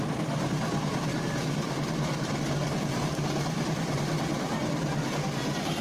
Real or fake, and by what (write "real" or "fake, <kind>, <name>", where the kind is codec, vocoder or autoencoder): real